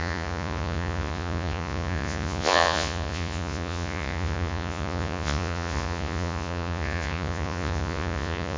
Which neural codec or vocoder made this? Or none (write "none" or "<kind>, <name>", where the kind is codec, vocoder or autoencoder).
vocoder, Vocos